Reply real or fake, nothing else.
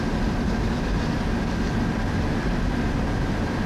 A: real